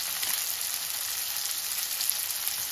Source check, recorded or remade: recorded